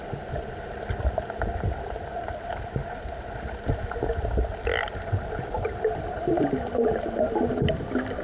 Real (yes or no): yes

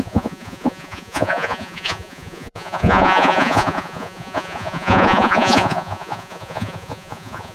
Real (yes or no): no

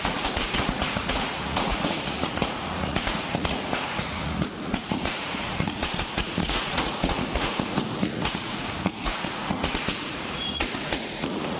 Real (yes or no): no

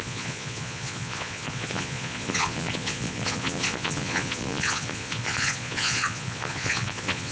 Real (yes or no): no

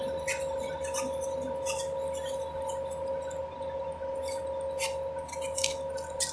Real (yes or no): yes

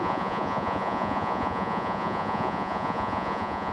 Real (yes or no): no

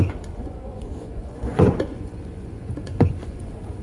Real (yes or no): no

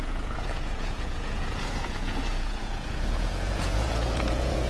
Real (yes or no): no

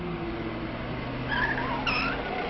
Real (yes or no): yes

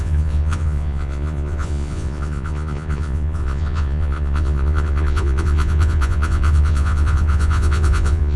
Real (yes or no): no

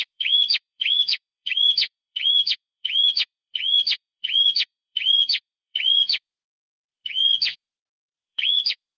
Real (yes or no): no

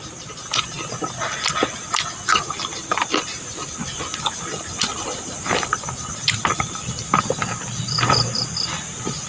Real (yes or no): yes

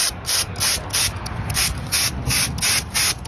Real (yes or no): yes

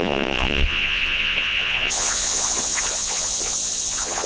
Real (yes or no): no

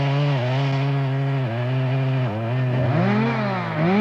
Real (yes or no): yes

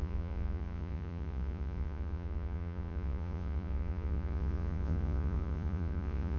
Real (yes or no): no